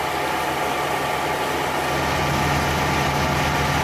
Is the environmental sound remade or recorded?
recorded